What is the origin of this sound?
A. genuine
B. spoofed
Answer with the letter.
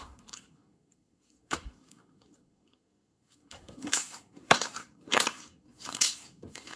B